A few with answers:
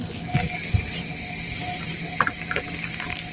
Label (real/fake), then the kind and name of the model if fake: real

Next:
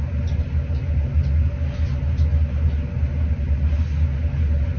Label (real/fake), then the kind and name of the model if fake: real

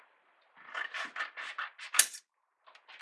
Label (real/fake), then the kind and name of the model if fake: real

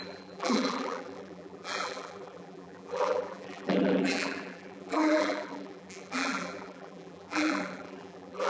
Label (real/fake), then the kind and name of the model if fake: fake, vocoder, BigVGAN v2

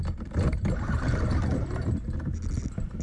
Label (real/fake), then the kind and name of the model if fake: real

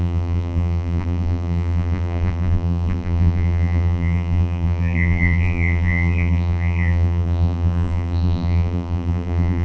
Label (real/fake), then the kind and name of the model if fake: fake, vocoder, BigVGAN v2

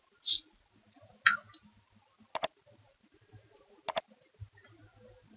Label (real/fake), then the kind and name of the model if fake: real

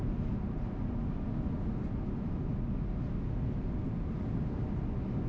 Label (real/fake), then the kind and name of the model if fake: real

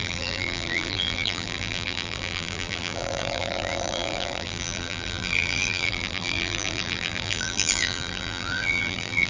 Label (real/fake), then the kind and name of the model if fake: fake, vocoder, BigVGAN v2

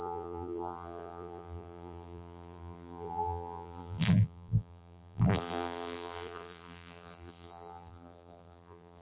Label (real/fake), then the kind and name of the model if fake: fake, vocoder, BigVGAN v2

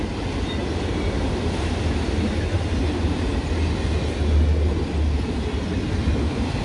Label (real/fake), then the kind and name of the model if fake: real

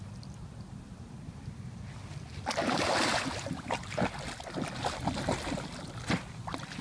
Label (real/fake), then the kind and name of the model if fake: real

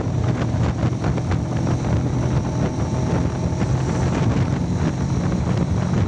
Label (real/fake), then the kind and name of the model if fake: real